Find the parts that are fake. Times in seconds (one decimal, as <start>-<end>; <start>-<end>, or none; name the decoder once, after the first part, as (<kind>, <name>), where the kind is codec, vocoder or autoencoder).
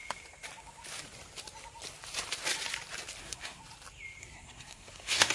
3.2-3.6 (codec, SNAC); 4.2-5.3